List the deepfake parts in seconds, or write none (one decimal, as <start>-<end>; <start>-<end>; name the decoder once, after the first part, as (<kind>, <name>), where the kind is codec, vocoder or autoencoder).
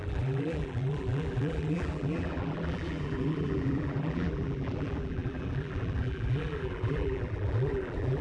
0.0-8.2 (vocoder, BigVGAN v2)